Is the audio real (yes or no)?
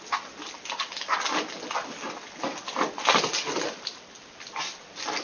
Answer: yes